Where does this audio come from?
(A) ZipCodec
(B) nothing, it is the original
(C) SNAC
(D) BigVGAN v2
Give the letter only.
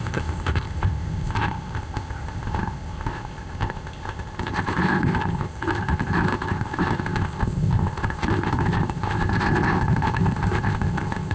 A